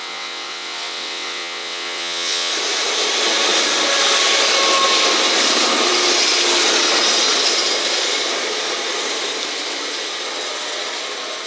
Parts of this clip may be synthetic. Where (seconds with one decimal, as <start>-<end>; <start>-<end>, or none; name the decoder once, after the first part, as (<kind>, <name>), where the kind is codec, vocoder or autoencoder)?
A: 0.0-2.5 (vocoder, WaveNeXt)